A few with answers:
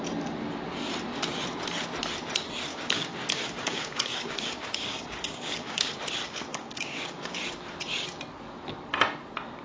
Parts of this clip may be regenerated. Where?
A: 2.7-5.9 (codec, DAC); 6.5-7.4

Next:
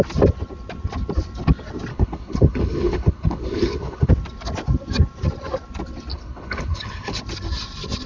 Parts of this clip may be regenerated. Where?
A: 1.9-4.1 (codec, HILCodec); 6.1-7.2

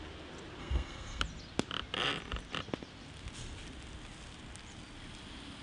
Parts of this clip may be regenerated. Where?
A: 0.6-1.2 (codec, SNAC)